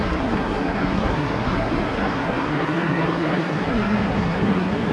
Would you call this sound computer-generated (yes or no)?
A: yes